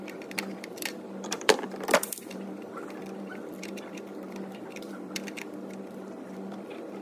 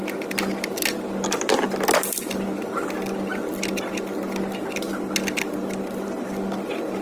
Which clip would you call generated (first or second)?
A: first